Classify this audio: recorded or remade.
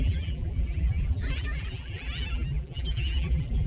remade